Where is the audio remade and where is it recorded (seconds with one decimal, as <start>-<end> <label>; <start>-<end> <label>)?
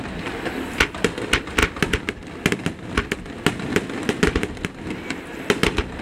0.0-6.0 recorded